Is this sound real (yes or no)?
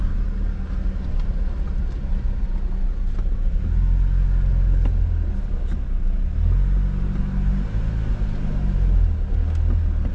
yes